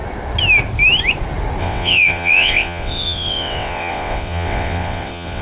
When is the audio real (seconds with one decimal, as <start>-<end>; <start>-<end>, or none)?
0.0-1.6